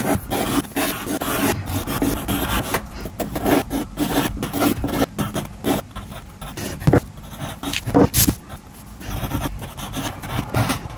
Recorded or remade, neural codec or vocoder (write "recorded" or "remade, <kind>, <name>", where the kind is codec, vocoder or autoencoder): recorded